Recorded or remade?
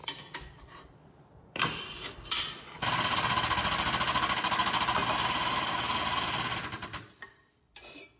recorded